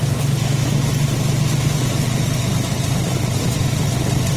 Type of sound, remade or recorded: recorded